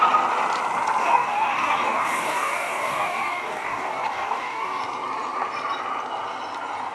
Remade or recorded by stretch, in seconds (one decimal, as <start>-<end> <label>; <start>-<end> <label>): 0.0-1.0 recorded; 1.0-4.8 remade; 4.8-6.9 recorded

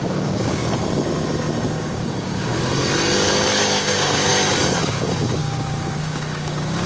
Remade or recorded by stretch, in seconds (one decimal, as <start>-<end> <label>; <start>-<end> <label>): 0.0-0.6 remade; 0.6-1.8 recorded; 1.8-2.5 remade; 2.5-3.6 recorded; 3.6-4.3 remade; 4.3-4.8 recorded; 4.8-6.9 remade

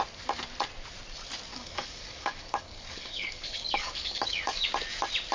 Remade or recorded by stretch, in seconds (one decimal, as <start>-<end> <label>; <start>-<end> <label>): 0.0-1.5 recorded; 1.5-4.7 remade; 4.7-5.3 recorded

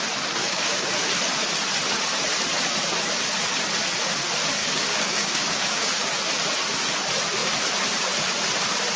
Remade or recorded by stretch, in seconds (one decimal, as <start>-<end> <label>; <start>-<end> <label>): 0.0-0.4 recorded; 0.4-0.9 remade; 0.9-4.6 recorded; 4.6-6.0 remade; 6.0-9.0 recorded